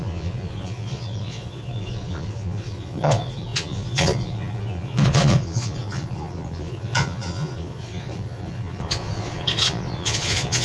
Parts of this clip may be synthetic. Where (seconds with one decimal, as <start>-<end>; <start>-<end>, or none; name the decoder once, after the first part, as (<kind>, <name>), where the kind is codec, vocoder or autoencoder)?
0.0-10.6 (vocoder, Vocos)